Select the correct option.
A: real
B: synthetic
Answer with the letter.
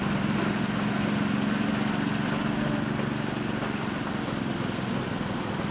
A